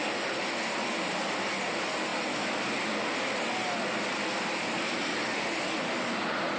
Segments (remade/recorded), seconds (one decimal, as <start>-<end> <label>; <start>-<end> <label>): 0.0-6.6 recorded